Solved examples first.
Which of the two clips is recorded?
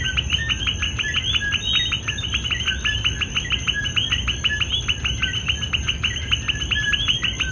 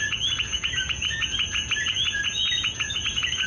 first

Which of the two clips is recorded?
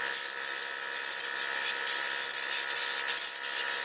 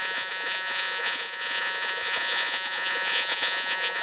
first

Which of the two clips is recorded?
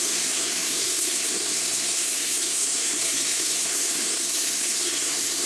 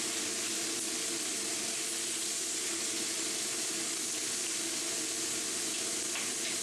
second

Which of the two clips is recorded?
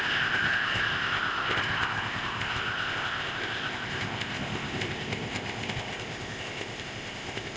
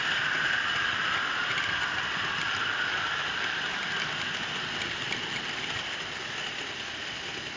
second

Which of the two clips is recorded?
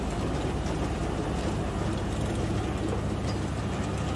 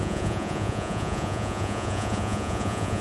first